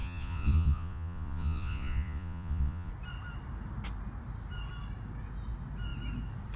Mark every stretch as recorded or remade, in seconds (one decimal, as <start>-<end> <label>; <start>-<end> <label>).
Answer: 0.0-2.9 remade; 2.9-6.6 recorded